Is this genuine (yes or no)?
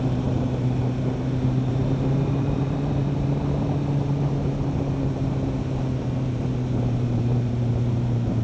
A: no